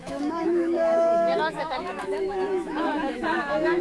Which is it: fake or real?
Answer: fake